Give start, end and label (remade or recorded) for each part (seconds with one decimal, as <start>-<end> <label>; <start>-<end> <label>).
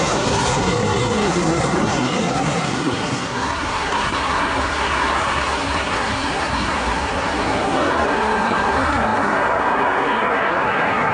0.0-11.1 remade